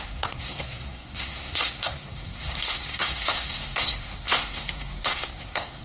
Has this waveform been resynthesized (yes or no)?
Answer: yes